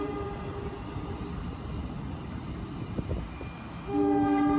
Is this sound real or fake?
real